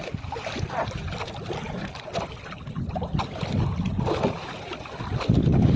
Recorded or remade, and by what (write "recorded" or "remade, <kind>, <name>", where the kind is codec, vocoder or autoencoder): recorded